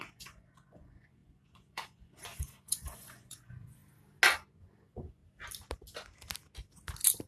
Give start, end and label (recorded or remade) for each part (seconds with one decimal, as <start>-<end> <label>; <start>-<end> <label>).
0.0-3.8 remade; 3.8-4.5 recorded; 4.5-5.2 remade; 5.2-7.3 recorded